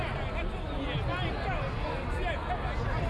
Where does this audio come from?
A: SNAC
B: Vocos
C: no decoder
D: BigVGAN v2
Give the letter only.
C